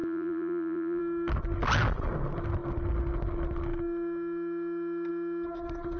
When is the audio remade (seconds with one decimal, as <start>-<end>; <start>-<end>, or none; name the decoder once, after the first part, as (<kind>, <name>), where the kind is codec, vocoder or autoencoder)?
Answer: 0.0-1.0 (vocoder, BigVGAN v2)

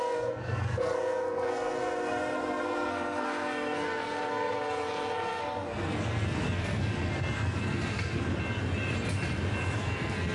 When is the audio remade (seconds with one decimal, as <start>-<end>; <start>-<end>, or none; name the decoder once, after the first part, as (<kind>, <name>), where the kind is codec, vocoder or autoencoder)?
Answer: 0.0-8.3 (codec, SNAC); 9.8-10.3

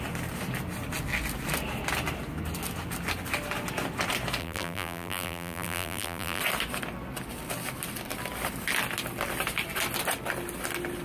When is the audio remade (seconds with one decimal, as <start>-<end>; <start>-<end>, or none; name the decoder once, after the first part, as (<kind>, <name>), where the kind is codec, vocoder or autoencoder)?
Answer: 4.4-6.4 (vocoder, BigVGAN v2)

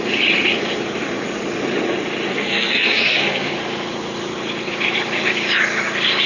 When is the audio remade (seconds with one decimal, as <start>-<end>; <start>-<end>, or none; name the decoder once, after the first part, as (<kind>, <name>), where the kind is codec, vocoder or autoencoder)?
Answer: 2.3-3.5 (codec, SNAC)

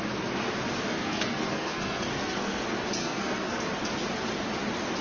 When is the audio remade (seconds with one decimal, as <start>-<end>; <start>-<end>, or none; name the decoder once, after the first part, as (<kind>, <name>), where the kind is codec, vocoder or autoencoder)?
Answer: 0.9-2.6 (codec, SNAC); 3.0-3.6

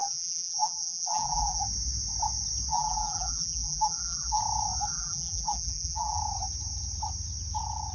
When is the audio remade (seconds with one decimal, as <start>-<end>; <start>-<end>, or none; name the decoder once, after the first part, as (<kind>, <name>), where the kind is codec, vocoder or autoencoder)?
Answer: 0.0-1.6 (vocoder, BigVGAN v2); 2.7-4.4; 4.9-6.2

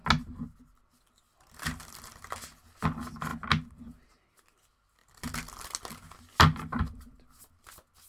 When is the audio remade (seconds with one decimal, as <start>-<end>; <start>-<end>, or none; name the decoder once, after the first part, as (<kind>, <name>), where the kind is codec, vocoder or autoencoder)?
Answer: none

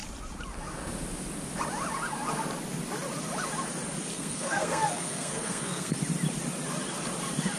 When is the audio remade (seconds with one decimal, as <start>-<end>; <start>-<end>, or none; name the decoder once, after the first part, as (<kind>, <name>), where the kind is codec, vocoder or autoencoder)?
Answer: 4.1-5.9 (codec, SNAC)